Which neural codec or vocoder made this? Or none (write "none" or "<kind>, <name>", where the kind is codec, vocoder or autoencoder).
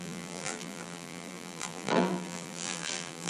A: vocoder, BigVGAN v2